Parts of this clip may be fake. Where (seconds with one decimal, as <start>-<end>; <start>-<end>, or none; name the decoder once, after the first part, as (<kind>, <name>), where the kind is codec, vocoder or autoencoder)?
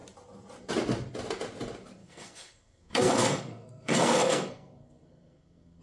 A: 2.0-5.8 (codec, SNAC)